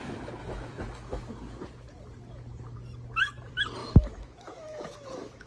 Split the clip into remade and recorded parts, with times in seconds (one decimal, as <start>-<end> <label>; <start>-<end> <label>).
0.0-0.4 recorded; 0.4-1.3 remade; 1.3-3.8 recorded; 3.8-5.5 remade